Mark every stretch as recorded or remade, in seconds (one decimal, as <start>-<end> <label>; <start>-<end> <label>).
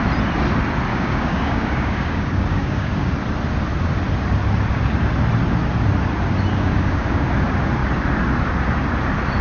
0.0-0.9 recorded; 0.9-3.1 remade; 3.1-6.5 recorded; 6.5-7.3 remade; 7.3-9.4 recorded